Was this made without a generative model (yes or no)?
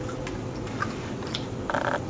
yes